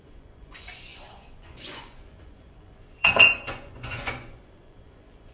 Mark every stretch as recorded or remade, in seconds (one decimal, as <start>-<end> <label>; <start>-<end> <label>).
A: 0.0-5.3 remade